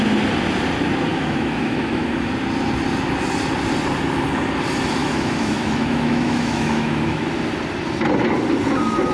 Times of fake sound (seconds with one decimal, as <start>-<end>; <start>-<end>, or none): 1.1-2.3; 5.0-7.3